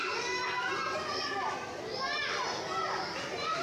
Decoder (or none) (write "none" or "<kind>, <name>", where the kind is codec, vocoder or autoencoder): none